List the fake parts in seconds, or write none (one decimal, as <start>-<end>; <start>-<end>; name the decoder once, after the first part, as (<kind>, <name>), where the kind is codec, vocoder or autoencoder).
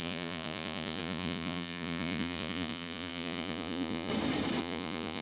0.0-4.1 (vocoder, Vocos); 4.6-5.2